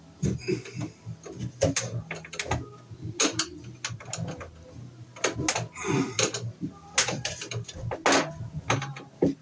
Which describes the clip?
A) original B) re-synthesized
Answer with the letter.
A